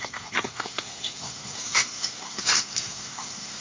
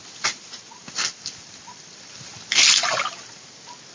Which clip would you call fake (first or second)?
first